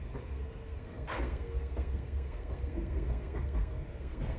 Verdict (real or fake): fake